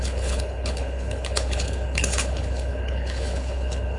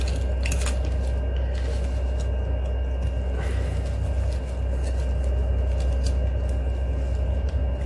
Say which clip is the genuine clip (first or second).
second